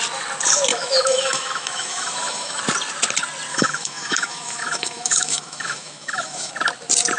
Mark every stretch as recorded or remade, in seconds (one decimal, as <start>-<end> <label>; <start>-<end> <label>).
0.0-0.7 recorded; 0.7-2.6 remade; 2.6-3.5 recorded; 3.5-6.5 remade; 6.5-7.2 recorded